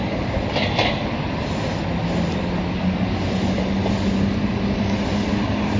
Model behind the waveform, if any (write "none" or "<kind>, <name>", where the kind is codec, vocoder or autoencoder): none